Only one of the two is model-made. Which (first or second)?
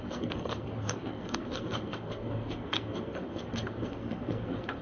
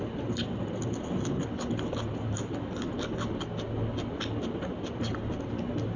first